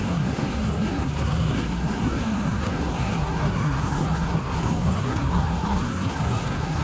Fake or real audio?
fake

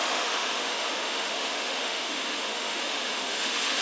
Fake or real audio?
fake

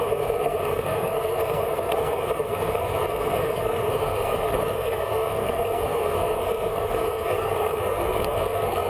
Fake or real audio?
fake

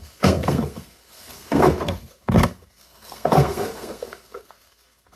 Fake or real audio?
fake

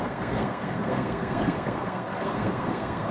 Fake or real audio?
fake